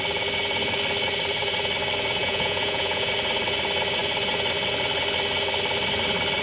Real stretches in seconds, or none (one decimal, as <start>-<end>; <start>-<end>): 0.0-2.2; 3.1-6.4

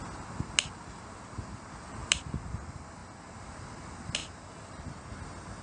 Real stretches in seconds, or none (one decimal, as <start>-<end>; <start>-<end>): 0.0-2.0; 2.5-5.6